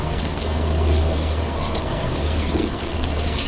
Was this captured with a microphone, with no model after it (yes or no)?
no